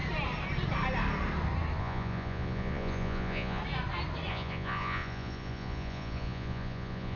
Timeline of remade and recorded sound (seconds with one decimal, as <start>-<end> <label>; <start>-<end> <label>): 0.0-1.8 recorded; 1.8-3.6 remade; 3.6-4.3 recorded; 4.3-7.2 remade